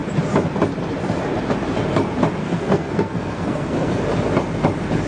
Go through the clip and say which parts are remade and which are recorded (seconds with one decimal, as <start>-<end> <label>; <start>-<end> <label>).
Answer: 0.0-2.4 recorded; 2.4-4.0 remade; 4.0-5.1 recorded